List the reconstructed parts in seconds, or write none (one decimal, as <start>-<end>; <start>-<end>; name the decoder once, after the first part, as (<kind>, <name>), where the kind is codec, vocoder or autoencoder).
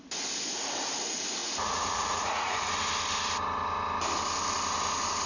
1.4-2.7 (vocoder, Vocos)